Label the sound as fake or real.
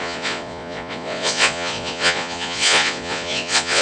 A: fake